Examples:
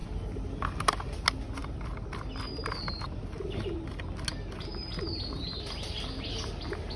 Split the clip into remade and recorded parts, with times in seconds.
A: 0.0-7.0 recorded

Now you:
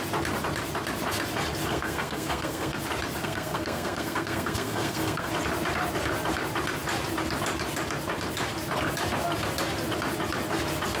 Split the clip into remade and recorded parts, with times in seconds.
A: 0.0-1.7 recorded; 1.7-2.8 remade; 2.8-3.2 recorded; 3.2-5.3 remade; 5.3-11.0 recorded

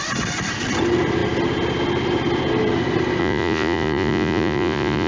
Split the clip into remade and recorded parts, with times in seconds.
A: 0.0-3.2 recorded; 3.2-5.1 remade

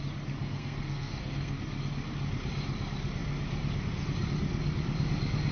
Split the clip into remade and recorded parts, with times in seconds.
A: 0.0-0.4 recorded; 0.4-1.6 remade; 1.6-5.5 recorded

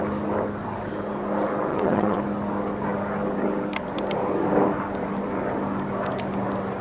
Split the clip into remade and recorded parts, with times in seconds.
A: 0.0-1.7 recorded; 1.7-2.2 remade; 2.2-6.8 recorded

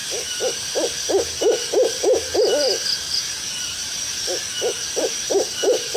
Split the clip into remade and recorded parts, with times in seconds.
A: 0.0-3.6 recorded; 3.6-4.1 remade; 4.1-5.0 recorded; 5.0-6.0 remade